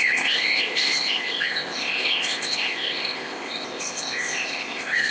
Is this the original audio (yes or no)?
no